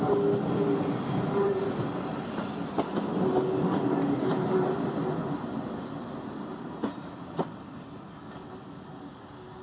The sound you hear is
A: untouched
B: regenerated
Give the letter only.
A